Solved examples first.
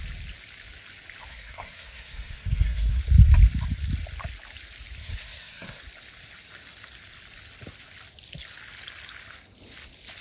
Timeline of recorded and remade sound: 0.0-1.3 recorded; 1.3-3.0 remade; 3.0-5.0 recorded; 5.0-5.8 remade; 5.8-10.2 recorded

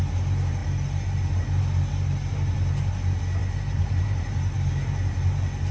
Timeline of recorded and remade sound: 0.0-3.4 recorded; 3.4-4.7 remade; 4.7-5.7 recorded

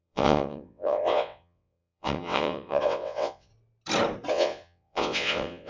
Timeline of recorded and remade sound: 0.0-3.5 remade; 3.5-4.3 recorded; 4.3-5.7 remade

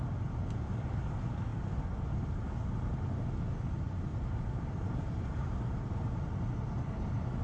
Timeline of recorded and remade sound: 0.0-4.1 recorded; 4.1-6.0 remade; 6.0-7.4 recorded

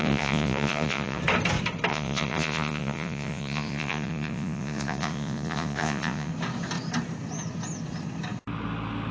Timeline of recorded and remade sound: 0.0-1.2 remade; 1.2-1.9 recorded; 1.9-6.3 remade; 6.3-9.1 recorded